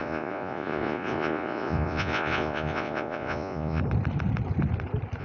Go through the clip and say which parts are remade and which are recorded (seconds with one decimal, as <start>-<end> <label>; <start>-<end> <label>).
0.0-3.8 remade; 3.8-5.2 recorded